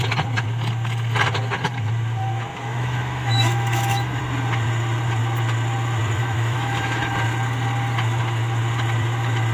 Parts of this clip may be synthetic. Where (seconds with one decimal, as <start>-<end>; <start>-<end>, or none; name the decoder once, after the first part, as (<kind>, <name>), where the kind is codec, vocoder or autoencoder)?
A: 2.5-4.2 (autoencoder, DAC-VAE); 6.2-7.1